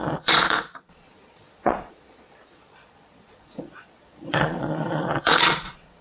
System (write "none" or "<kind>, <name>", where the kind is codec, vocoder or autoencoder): vocoder, Vocos